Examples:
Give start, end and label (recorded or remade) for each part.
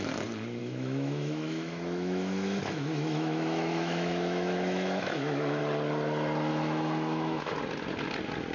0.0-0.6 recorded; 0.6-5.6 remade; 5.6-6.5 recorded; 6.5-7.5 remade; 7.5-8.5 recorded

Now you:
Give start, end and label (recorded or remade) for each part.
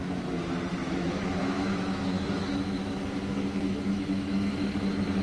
0.0-0.8 recorded; 0.8-2.9 remade; 2.9-3.9 recorded; 3.9-4.5 remade; 4.5-5.2 recorded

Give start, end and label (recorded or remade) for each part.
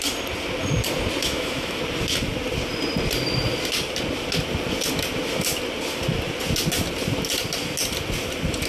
0.0-1.2 recorded; 1.2-1.8 remade; 1.8-8.7 recorded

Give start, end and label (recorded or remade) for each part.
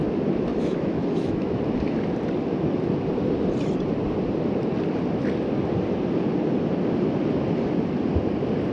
0.0-0.5 recorded; 0.5-1.6 remade; 1.6-8.7 recorded